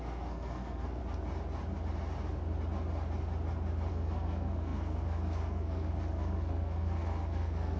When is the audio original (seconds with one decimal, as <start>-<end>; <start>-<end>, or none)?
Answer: 1.0-3.9